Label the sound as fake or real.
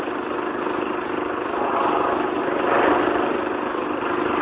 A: real